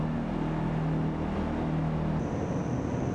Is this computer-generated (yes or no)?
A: no